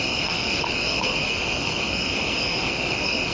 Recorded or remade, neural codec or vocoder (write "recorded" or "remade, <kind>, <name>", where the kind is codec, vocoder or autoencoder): remade, codec, SNAC